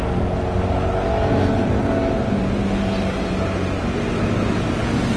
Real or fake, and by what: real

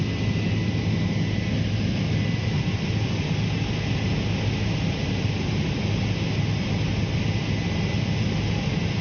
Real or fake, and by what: real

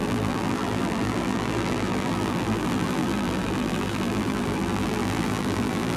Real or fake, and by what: fake, vocoder, BigVGAN v2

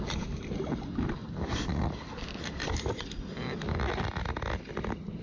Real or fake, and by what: real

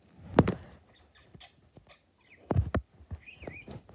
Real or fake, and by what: real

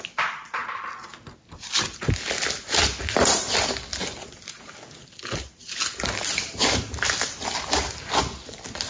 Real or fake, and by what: real